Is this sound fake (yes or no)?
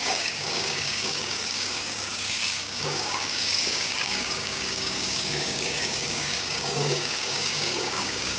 yes